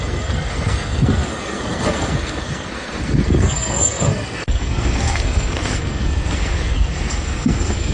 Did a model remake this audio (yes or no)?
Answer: yes